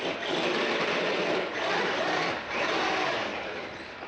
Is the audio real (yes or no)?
yes